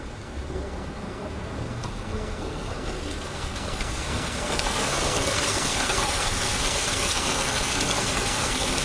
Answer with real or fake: fake